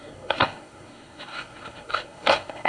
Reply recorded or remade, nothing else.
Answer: remade